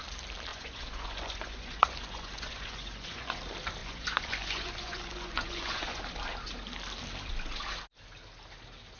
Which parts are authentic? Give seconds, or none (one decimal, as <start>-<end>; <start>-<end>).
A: 0.0-0.5; 3.4-3.8; 6.0-9.0